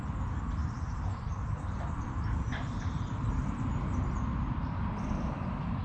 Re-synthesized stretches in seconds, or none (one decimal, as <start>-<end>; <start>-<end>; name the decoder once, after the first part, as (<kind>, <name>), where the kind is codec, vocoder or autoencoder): 0.6-3.7 (vocoder, BigVGAN v2)